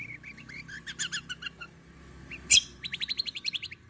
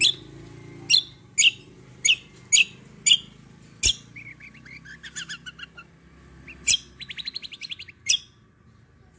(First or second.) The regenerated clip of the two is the first